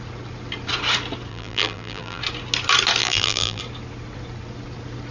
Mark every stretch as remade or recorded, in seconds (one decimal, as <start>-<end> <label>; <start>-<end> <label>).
0.0-1.3 recorded; 1.3-2.2 remade; 2.2-3.0 recorded; 3.0-3.6 remade; 3.6-5.1 recorded